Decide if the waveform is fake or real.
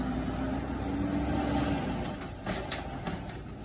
real